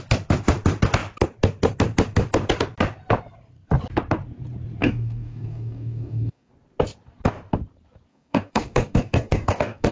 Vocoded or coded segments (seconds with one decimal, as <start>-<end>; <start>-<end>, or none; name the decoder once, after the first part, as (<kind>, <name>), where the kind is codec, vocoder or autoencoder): 4.8-6.5 (codec, DAC); 8.1-9.9